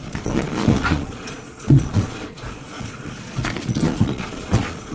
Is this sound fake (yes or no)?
yes